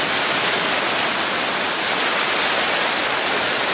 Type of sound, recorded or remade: recorded